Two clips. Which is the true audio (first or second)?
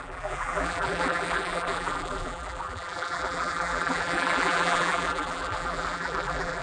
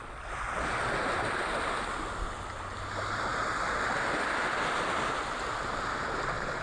second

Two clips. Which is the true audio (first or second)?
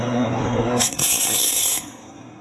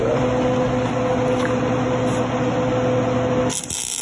second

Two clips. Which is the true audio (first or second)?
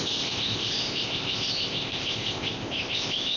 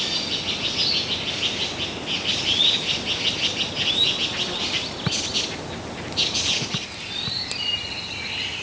second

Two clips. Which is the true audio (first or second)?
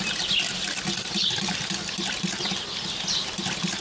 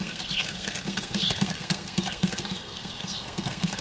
first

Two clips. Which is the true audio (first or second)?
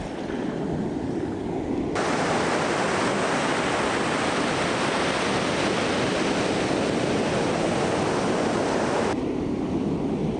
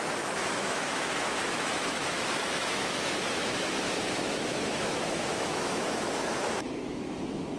first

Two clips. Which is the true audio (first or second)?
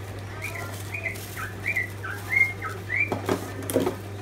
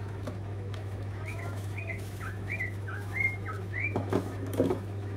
first